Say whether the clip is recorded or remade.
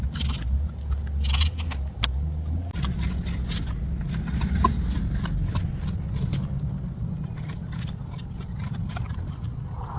recorded